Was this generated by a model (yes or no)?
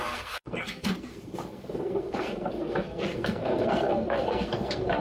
yes